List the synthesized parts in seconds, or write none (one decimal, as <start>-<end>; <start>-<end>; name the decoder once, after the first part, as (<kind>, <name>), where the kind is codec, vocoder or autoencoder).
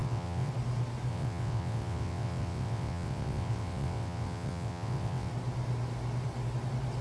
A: 0.0-0.5 (vocoder, WaveNeXt); 1.1-5.3